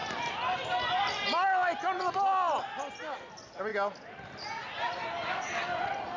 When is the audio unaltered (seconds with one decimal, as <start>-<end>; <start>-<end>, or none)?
0.0-6.2